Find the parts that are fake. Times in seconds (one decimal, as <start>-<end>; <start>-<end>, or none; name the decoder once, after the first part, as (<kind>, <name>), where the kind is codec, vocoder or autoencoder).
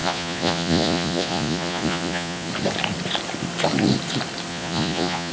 0.0-2.5 (vocoder, Vocos); 4.5-5.3